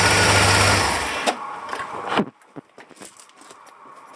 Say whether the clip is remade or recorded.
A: recorded